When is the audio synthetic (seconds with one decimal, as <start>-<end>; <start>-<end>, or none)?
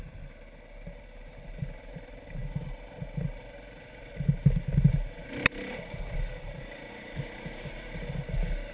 none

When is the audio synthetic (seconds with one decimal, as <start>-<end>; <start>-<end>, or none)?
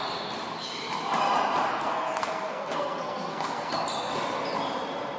1.7-3.7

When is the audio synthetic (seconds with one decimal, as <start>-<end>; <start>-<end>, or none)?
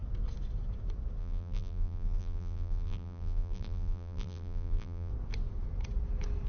1.2-5.1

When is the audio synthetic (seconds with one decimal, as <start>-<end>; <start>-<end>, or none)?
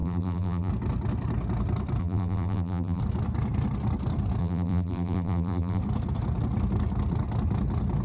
0.0-0.7; 2.0-3.0; 4.4-5.8